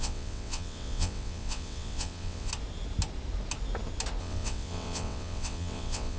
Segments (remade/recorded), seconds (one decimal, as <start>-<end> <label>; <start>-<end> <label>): 0.0-2.5 remade; 2.5-4.2 recorded; 4.2-6.2 remade